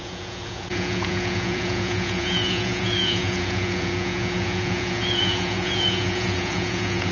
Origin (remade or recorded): remade